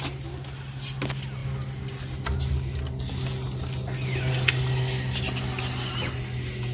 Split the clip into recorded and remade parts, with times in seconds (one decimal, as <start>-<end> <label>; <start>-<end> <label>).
0.0-6.7 recorded